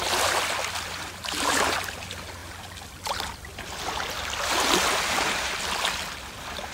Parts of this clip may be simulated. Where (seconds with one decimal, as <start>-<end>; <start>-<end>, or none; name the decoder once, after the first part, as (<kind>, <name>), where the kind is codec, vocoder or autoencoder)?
none